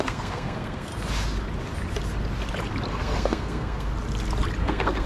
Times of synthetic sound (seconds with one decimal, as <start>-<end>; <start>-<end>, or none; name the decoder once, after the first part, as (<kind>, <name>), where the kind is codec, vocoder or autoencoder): 0.0-0.9 (codec, SNAC); 2.9-3.9; 4.6-5.1